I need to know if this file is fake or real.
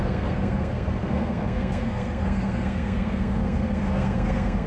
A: fake